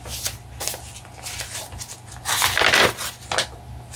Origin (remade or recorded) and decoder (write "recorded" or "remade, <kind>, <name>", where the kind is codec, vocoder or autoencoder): recorded